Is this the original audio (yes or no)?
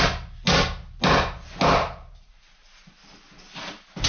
yes